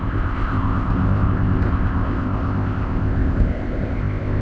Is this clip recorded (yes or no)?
no